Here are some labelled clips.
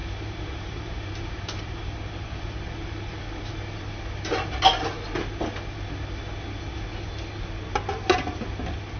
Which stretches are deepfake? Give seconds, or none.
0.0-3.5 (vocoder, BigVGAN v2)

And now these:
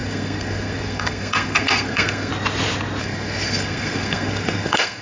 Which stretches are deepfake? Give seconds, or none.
0.0-2.3 (codec, SNAC); 3.0-5.0

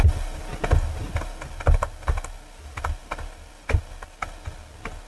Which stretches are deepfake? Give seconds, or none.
none